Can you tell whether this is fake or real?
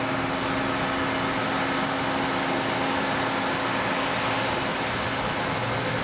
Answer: real